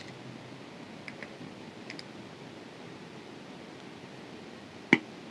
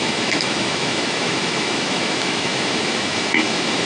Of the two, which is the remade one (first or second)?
second